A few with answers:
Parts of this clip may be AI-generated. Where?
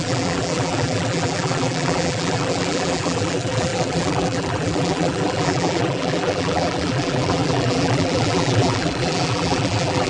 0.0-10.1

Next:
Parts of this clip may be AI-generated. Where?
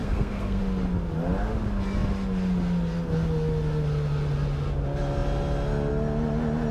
0.0-0.6